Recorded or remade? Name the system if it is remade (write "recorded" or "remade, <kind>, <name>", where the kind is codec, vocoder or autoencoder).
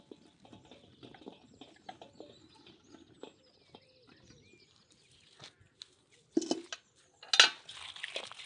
recorded